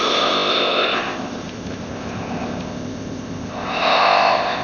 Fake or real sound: fake